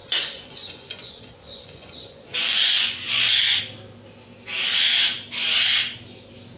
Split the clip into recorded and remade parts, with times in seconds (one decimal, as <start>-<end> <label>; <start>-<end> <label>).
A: 0.0-3.6 remade; 3.6-6.6 recorded